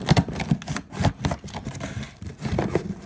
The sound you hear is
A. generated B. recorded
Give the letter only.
B